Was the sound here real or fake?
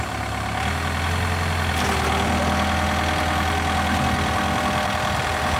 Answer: real